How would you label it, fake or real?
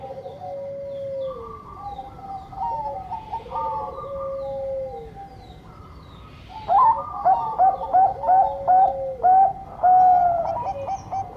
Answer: real